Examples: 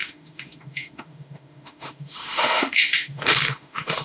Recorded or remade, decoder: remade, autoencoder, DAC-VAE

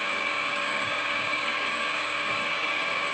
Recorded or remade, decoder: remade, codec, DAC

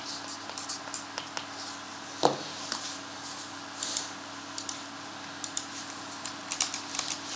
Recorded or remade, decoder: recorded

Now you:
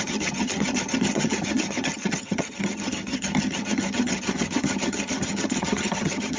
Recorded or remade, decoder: remade, vocoder, HiFi-GAN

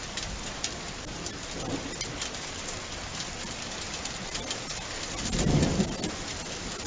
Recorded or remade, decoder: recorded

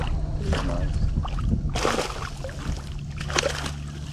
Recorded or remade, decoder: recorded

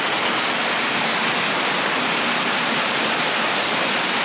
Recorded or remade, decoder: recorded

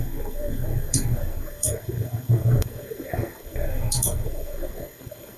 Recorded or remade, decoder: remade, codec, SNAC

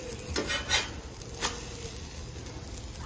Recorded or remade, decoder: recorded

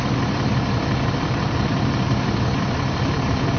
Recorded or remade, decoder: remade, vocoder, BigVGAN v2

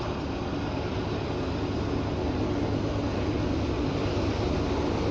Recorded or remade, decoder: recorded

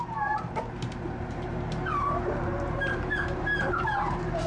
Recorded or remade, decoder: remade, vocoder, BigVGAN v2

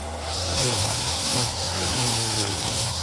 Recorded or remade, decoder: remade, codec, SNAC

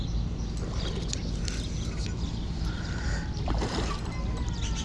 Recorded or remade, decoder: recorded